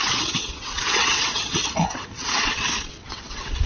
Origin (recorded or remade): remade